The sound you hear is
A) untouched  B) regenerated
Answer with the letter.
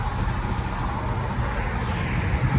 A